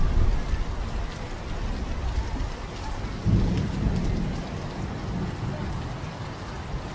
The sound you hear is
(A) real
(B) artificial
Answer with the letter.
A